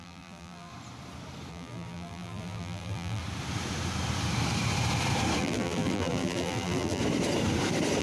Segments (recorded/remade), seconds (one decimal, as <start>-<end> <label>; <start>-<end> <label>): 0.0-0.7 remade; 0.7-1.5 recorded; 1.5-3.2 remade; 3.2-5.4 recorded; 5.4-7.0 remade; 7.0-8.0 recorded